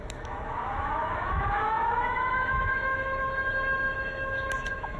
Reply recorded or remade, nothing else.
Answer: remade